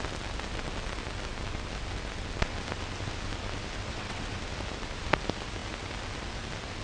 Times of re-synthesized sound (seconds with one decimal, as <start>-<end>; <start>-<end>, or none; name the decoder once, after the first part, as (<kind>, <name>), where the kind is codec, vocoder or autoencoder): 3.9-4.4 (vocoder, WaveNeXt)

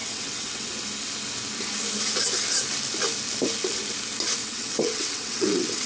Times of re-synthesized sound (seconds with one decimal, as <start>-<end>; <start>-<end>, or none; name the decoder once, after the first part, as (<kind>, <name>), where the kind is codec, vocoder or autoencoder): 0.0-0.7 (vocoder, WaveNeXt); 4.4-5.9

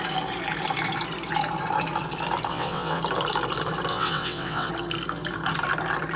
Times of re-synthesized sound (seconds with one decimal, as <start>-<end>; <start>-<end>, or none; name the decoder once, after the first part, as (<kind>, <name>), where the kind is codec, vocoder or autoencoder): 2.5-3.0 (vocoder, WaveNeXt); 3.9-4.7

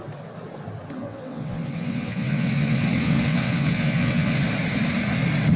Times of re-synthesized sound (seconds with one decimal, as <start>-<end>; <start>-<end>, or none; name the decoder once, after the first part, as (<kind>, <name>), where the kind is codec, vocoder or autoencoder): 1.0-4.4 (vocoder, WaveNeXt)

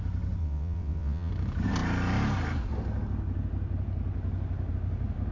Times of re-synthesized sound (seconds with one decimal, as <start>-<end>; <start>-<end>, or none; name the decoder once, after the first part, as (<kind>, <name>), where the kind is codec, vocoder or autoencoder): 0.4-1.3 (vocoder, WaveNeXt)